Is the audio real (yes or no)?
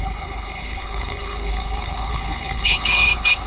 no